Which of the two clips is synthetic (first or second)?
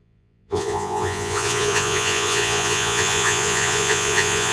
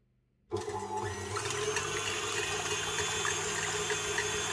first